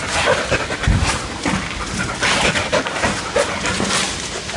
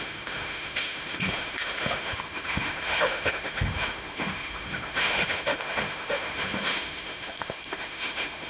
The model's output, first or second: second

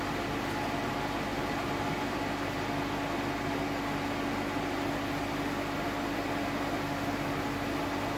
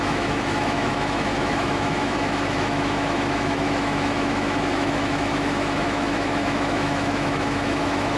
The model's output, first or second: second